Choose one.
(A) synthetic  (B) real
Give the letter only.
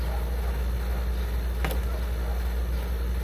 B